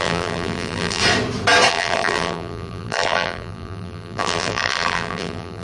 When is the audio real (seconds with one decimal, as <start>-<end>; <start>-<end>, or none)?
1.0-1.7